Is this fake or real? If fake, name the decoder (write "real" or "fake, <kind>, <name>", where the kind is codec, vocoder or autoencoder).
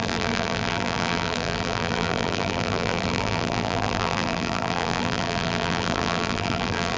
fake, vocoder, BigVGAN v2